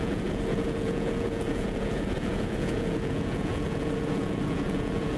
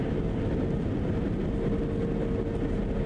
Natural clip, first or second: second